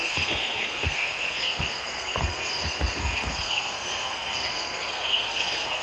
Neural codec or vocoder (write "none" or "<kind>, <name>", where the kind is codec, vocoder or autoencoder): codec, SNAC